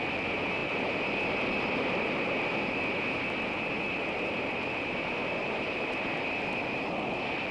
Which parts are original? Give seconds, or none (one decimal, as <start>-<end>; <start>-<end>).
0.0-7.5